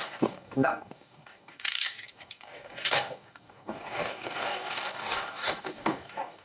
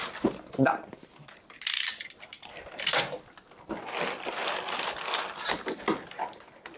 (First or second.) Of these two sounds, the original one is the second